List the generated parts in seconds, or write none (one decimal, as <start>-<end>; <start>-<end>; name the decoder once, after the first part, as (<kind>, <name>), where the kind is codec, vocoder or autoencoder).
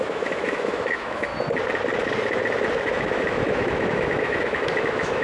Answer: 0.0-1.3 (autoencoder, DAC-VAE); 2.8-5.2